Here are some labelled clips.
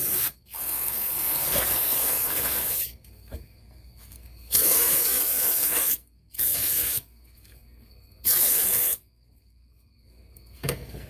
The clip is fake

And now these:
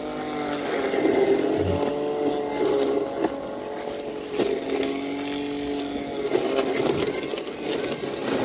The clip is real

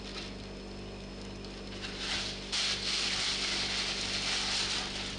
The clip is real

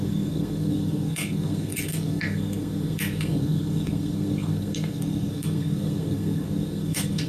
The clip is fake